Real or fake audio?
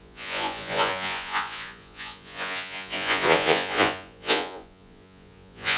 fake